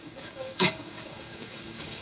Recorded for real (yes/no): no